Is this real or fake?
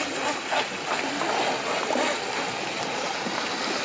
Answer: real